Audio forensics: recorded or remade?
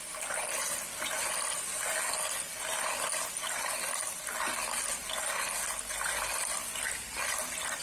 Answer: recorded